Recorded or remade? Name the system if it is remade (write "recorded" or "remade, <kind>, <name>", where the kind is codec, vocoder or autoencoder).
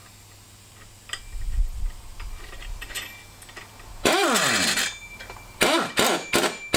recorded